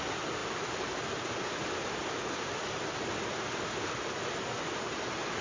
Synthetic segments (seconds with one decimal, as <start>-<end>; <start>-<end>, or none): none